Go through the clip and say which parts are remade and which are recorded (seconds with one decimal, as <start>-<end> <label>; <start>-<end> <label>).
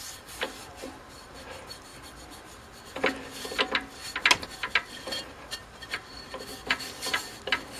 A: 0.0-0.7 remade; 0.7-1.4 recorded; 1.4-1.9 remade; 1.9-4.9 recorded; 4.9-6.5 remade; 6.5-7.8 recorded